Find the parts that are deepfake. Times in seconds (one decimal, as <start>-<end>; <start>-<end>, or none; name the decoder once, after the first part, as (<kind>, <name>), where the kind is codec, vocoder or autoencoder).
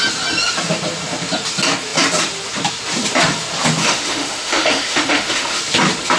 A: 3.8-5.6 (autoencoder, DAC-VAE)